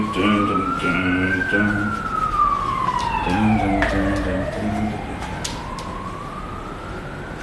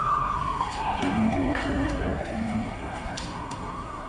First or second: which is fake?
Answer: second